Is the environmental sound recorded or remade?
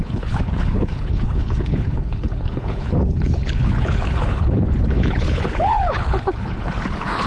remade